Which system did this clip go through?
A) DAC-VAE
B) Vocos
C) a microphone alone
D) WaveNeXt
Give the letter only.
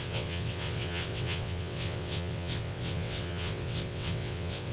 D